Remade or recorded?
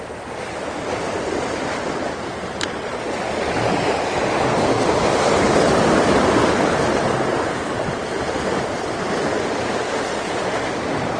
recorded